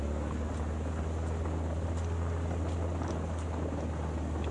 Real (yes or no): yes